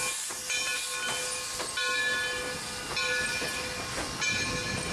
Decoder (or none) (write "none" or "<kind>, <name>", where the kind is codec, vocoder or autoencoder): none